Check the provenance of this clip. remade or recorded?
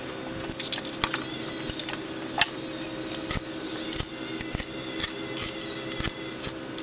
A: recorded